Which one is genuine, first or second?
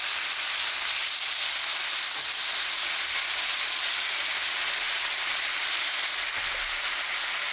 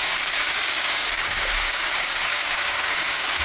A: first